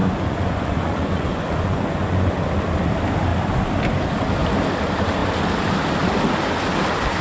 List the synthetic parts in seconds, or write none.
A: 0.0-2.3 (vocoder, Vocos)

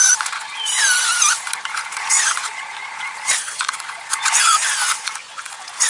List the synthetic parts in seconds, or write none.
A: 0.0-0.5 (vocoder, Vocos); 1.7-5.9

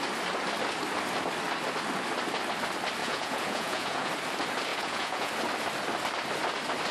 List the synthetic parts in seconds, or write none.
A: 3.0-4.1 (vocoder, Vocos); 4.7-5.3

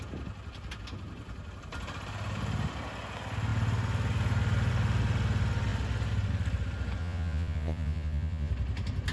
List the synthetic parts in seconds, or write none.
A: 7.0-8.5 (vocoder, Vocos)